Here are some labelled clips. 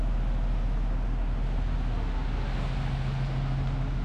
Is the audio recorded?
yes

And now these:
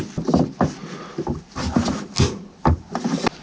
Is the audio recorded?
yes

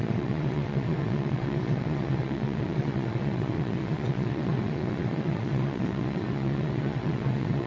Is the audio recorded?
no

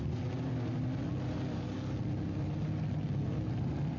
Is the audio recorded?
yes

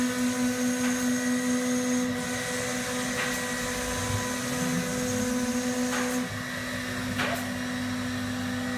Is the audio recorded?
yes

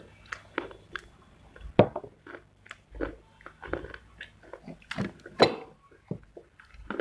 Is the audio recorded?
yes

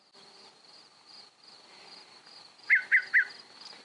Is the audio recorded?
yes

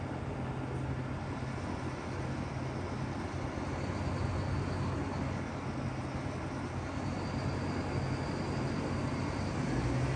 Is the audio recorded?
yes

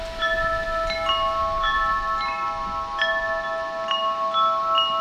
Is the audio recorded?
yes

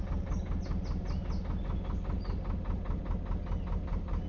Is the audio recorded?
yes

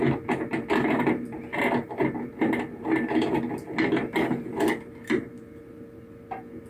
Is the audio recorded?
yes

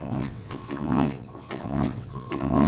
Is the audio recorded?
no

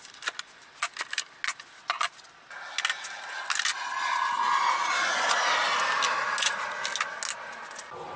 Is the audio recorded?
yes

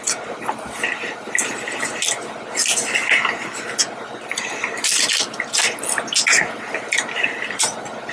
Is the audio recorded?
yes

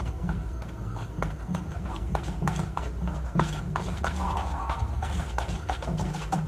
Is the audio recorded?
no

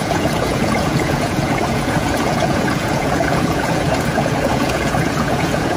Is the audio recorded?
no